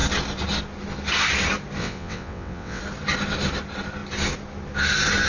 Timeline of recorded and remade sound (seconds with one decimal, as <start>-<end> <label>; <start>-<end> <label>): 0.0-1.8 recorded; 1.8-2.8 remade; 2.8-5.3 recorded